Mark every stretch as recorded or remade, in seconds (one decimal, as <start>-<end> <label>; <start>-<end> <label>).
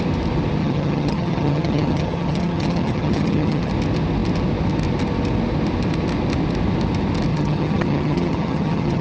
0.0-0.6 recorded; 0.6-3.7 remade; 3.7-7.3 recorded; 7.3-9.0 remade